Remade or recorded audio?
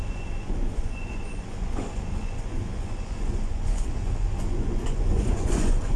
remade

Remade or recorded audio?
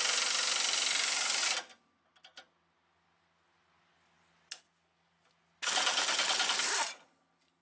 recorded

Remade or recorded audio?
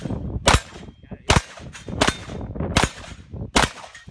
recorded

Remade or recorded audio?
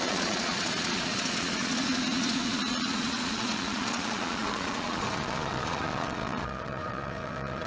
remade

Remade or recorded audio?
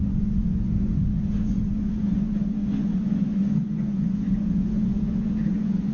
remade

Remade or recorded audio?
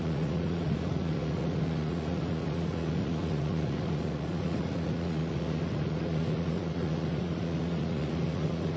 remade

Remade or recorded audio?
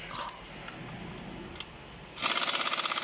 recorded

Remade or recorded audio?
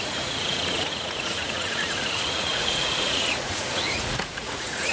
remade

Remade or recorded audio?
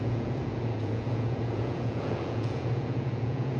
remade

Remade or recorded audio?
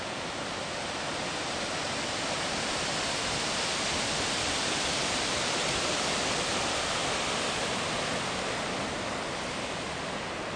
recorded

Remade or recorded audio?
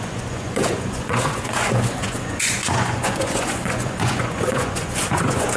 remade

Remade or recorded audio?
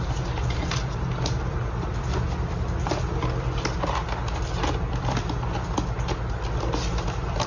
recorded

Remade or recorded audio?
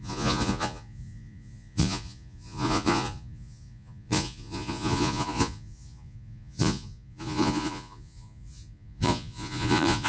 remade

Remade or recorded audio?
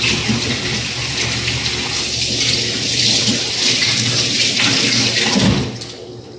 recorded